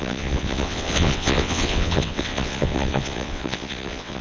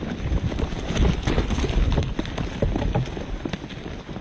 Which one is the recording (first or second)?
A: second